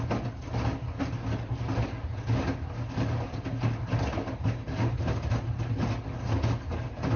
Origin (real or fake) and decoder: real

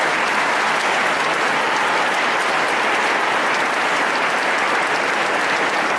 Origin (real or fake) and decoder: real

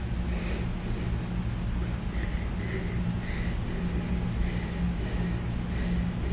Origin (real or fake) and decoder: real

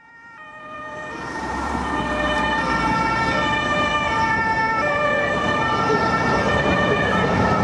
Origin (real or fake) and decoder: fake, vocoder, BigVGAN v2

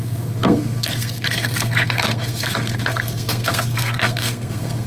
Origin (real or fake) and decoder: fake, codec, SNAC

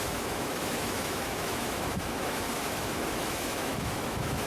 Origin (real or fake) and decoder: fake, autoencoder, DAC-VAE